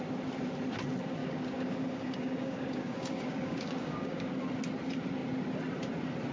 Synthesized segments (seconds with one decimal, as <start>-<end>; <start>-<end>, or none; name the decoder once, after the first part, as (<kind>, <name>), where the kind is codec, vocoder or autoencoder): 1.2-4.3 (codec, DAC)